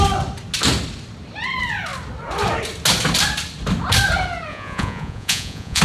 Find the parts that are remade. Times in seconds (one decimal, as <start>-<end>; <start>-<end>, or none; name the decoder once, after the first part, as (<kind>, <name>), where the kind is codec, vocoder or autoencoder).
4.5-5.8 (vocoder, Vocos)

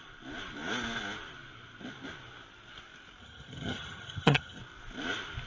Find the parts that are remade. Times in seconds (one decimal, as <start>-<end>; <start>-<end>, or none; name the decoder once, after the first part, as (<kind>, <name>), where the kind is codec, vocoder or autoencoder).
3.2-4.6 (vocoder, HiFi-GAN)